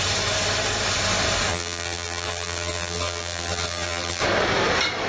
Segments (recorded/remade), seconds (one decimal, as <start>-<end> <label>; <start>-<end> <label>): 0.0-1.5 recorded; 1.5-4.2 remade; 4.2-5.1 recorded

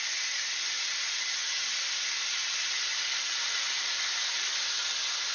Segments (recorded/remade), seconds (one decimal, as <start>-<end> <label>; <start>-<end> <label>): 0.0-5.3 recorded

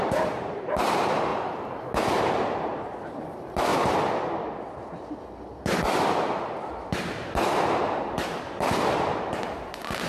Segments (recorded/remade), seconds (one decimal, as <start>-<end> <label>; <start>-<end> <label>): 0.0-1.3 remade; 1.3-2.2 recorded; 2.2-2.7 remade; 2.7-3.3 recorded; 3.3-3.7 remade; 3.7-7.7 recorded; 7.7-10.1 remade

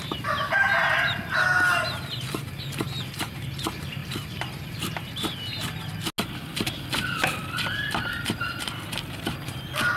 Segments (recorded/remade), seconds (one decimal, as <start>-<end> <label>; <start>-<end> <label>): 0.0-4.0 recorded; 4.0-5.1 remade; 5.1-7.4 recorded; 7.4-8.4 remade; 8.4-10.0 recorded

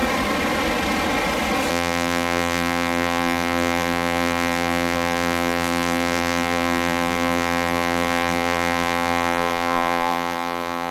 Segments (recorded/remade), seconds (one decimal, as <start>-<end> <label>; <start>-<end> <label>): 0.0-1.7 recorded; 1.7-10.9 remade

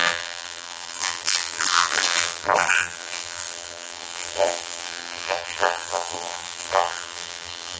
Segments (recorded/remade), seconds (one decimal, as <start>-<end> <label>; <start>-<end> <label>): 0.0-7.8 remade